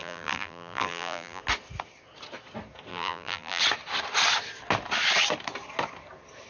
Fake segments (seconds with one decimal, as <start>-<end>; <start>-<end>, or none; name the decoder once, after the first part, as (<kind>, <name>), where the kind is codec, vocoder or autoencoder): 0.0-1.4 (vocoder, BigVGAN v2); 2.9-3.6